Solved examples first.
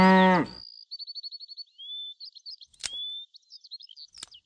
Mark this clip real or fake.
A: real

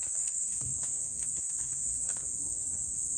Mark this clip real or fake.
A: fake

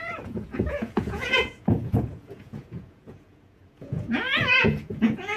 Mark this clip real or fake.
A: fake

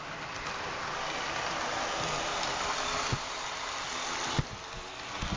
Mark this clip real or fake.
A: real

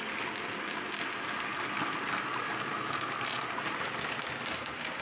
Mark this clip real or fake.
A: real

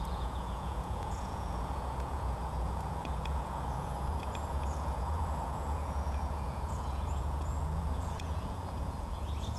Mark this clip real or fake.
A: fake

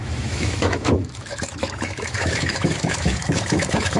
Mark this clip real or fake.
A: fake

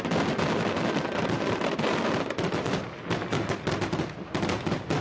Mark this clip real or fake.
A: real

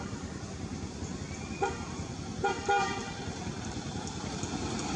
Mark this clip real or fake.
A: real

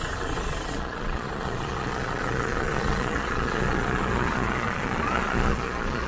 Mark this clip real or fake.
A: fake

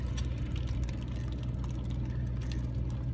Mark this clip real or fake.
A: real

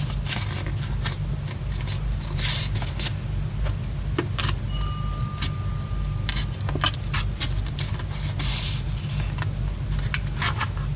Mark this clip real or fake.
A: real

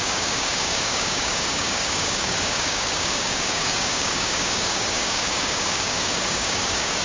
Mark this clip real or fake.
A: fake